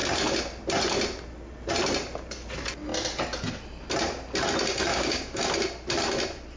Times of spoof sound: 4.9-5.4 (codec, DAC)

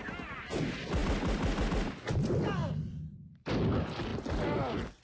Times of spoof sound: none